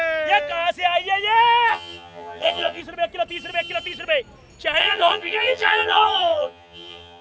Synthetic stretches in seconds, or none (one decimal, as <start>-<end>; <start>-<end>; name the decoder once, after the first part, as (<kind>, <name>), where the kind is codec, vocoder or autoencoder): 1.7-2.8 (vocoder, HiFi-GAN); 4.8-7.2